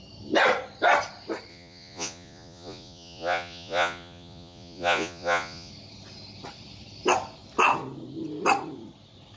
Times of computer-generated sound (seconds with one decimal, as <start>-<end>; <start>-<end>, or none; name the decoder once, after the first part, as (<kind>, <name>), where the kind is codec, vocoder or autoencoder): 1.5-5.7 (vocoder, Vocos)